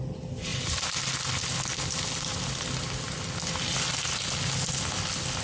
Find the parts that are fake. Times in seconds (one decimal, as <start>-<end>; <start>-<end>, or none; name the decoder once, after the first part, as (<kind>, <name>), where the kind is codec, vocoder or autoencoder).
none